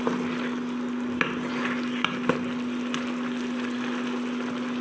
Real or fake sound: real